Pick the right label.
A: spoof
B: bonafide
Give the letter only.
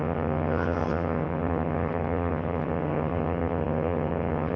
A